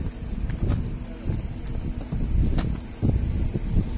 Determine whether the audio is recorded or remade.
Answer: recorded